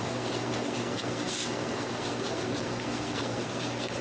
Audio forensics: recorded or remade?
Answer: remade